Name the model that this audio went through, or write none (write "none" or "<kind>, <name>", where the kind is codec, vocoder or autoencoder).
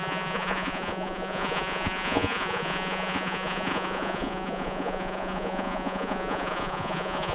vocoder, Vocos